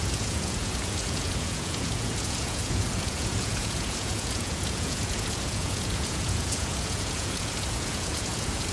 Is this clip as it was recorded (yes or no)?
no